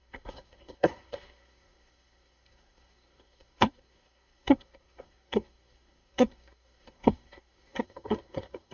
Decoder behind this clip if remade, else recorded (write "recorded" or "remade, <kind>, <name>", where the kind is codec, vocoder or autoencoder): remade, codec, SNAC